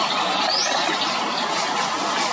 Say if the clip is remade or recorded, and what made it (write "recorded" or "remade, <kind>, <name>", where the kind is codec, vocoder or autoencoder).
recorded